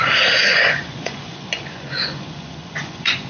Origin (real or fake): fake